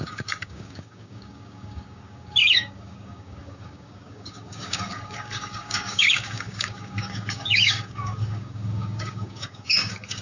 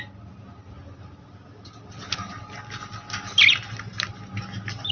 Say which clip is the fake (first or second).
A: first